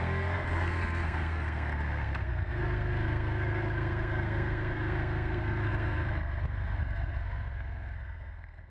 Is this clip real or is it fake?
fake